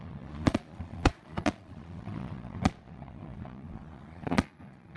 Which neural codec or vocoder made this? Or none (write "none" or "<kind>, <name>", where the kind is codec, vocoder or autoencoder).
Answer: vocoder, Vocos